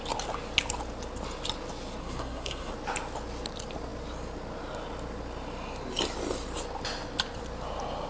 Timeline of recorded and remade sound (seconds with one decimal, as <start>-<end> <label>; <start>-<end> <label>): 0.0-2.0 recorded; 2.0-2.7 remade; 2.7-8.1 recorded